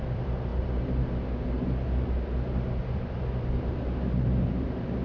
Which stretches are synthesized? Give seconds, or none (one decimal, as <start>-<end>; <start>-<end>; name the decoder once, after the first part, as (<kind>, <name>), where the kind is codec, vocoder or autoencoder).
0.0-0.5 (vocoder, BigVGAN v2); 2.9-5.0